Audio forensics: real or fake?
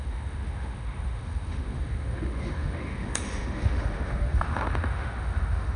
fake